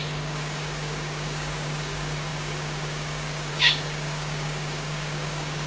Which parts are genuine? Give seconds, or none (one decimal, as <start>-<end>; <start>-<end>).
none